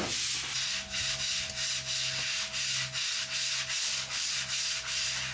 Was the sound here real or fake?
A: real